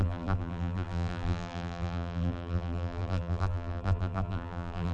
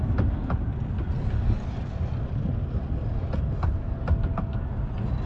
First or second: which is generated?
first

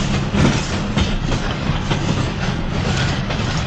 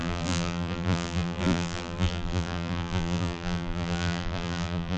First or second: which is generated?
second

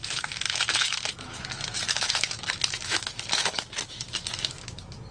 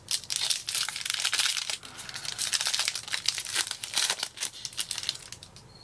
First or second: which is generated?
first